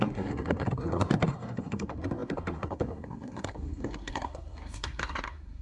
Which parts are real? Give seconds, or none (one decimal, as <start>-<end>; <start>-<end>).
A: none